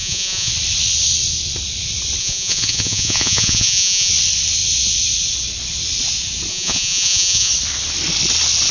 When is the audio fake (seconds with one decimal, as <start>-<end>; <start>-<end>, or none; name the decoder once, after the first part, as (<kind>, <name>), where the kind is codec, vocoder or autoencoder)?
0.0-0.5 (vocoder, Vocos); 2.2-4.1; 6.5-7.5